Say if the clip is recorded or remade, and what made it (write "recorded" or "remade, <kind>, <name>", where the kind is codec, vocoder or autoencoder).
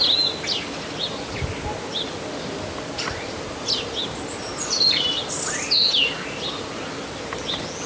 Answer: recorded